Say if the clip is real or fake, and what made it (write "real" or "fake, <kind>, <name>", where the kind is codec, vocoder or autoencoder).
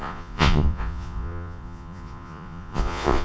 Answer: fake, vocoder, Vocos